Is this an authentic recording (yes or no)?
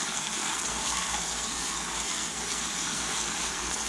no